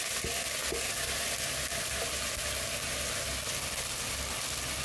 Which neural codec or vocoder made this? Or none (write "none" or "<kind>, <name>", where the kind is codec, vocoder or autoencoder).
none